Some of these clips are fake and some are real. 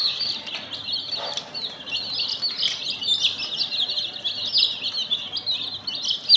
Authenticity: real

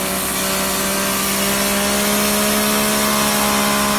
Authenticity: real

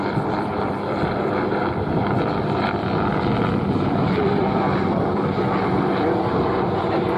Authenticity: fake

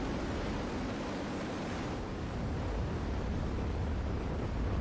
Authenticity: fake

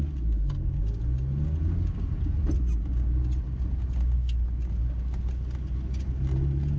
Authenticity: real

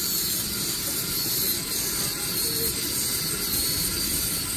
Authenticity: real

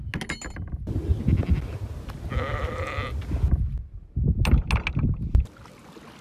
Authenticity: real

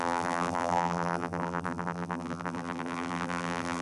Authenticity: fake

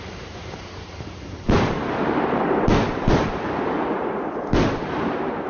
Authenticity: fake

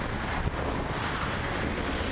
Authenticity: real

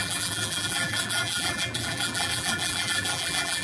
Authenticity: fake